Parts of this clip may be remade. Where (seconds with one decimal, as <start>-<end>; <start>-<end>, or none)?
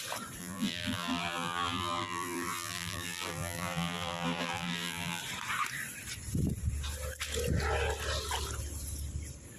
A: 0.4-5.2